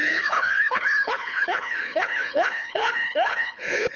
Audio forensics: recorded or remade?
remade